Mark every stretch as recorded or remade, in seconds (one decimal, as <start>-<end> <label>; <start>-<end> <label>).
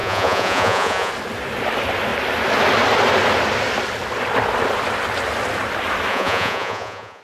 0.0-1.1 remade; 1.1-6.1 recorded; 6.1-7.2 remade